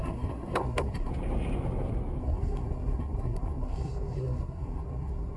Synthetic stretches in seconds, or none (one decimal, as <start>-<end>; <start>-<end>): 0.0-1.1; 2.2-5.4